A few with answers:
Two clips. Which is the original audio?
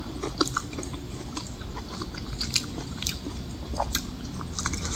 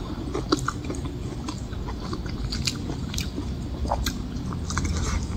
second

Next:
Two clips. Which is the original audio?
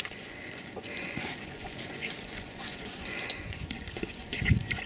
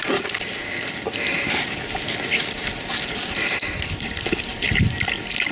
second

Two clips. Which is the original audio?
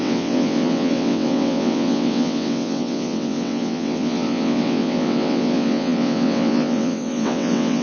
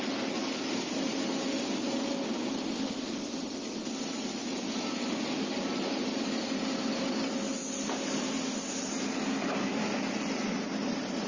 second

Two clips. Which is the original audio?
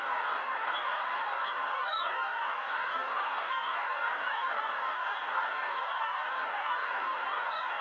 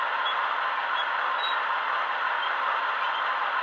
second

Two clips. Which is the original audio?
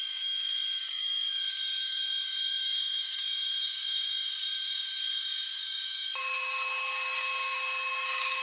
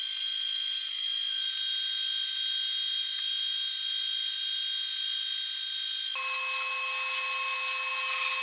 second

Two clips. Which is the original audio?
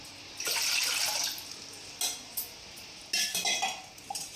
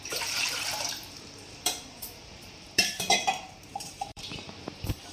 first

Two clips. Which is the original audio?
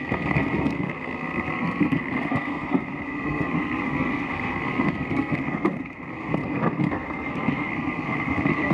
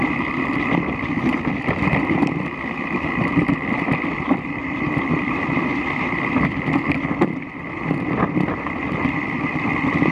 second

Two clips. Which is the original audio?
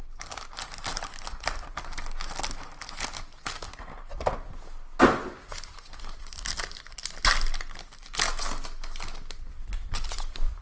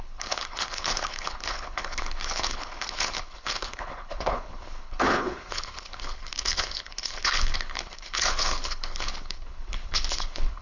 first